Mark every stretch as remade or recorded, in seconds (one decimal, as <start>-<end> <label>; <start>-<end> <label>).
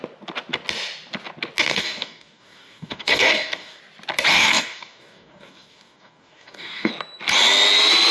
0.0-1.7 recorded; 1.7-3.8 remade; 3.8-4.3 recorded; 4.3-6.9 remade; 6.9-8.1 recorded